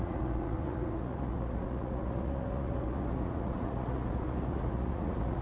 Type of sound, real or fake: fake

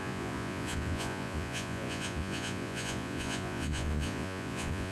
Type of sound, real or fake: fake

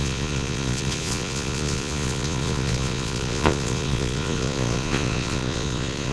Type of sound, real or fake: fake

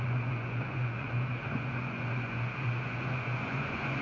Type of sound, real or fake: fake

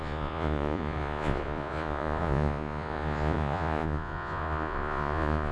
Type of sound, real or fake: fake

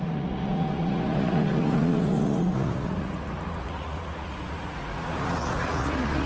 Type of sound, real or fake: fake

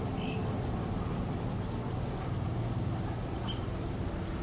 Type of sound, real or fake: real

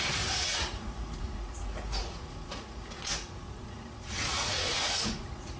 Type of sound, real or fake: fake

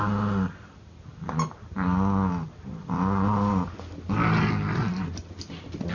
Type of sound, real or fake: real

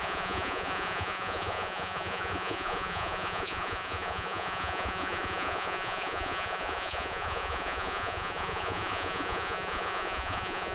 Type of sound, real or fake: fake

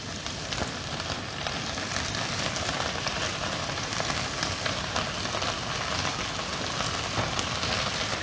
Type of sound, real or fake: real